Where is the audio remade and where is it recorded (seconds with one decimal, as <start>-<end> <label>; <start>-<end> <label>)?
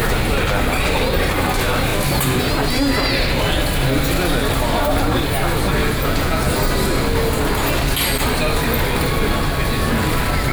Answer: 0.0-5.8 recorded; 5.8-6.5 remade; 6.5-10.5 recorded